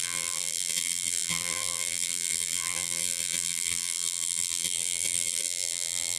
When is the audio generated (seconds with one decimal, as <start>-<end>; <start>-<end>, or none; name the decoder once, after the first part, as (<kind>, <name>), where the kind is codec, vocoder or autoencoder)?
0.0-6.2 (vocoder, BigVGAN v2)